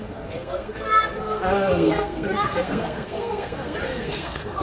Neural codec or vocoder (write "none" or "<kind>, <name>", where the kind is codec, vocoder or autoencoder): codec, SNAC